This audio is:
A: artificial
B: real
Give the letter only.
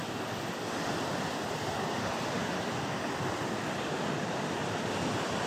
A